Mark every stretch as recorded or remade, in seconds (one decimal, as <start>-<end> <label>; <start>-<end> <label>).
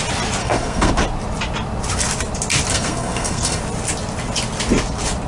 0.0-0.4 recorded; 0.4-0.9 remade; 0.9-2.7 recorded; 2.7-3.6 remade; 3.6-5.3 recorded